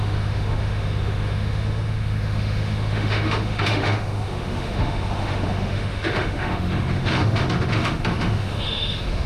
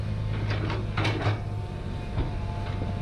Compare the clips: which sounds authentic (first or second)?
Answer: second